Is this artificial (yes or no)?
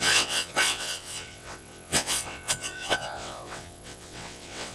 yes